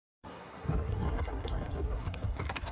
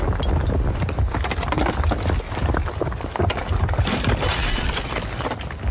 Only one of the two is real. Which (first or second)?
second